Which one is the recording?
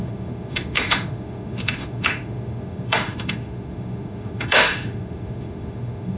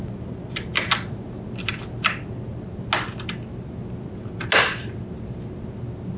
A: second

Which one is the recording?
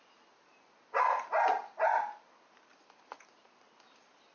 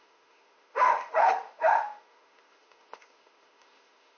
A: first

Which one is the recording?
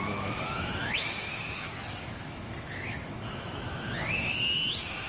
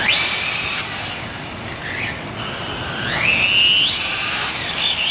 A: second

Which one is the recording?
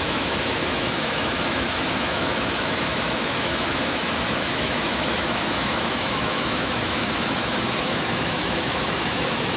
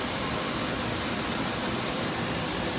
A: second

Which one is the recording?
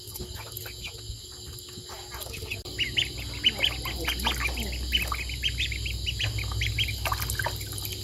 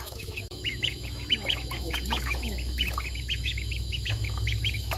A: first